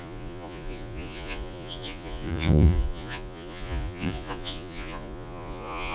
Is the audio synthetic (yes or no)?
yes